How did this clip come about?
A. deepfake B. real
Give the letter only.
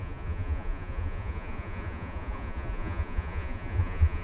A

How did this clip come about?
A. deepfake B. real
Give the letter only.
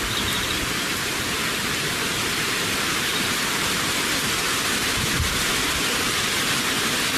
A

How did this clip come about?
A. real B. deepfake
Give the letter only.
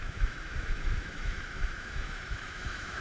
B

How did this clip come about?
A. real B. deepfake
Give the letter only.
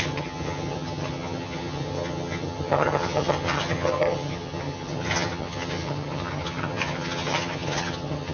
B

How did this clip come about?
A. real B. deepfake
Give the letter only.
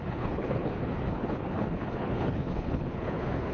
B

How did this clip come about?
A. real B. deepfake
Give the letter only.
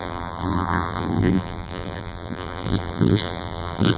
B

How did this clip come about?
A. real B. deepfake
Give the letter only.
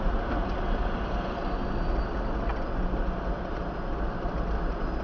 A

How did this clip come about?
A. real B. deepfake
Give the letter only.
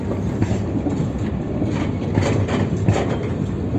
A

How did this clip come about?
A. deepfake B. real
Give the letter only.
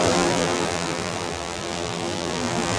A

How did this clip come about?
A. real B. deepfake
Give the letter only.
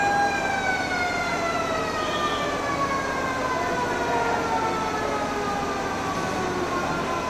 A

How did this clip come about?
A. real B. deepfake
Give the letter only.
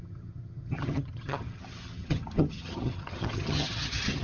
B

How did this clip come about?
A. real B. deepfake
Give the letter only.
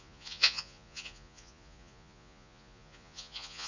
B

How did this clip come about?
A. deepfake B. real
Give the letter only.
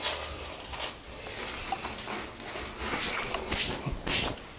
B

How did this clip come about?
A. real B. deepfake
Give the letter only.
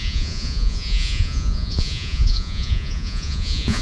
B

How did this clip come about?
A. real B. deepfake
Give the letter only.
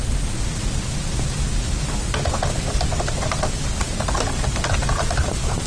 B